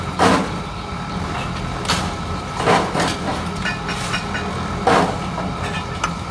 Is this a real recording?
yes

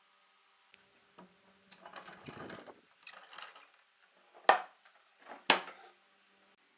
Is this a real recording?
yes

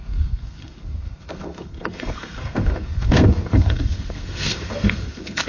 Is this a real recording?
no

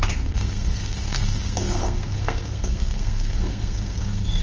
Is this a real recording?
no